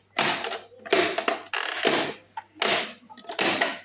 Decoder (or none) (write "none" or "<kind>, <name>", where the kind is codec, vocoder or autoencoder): none